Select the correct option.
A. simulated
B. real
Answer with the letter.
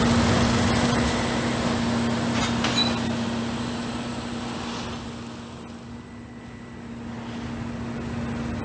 B